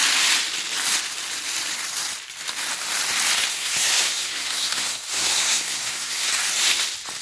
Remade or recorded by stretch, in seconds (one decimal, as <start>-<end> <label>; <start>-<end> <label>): 0.0-3.5 recorded; 3.5-6.3 remade; 6.3-7.2 recorded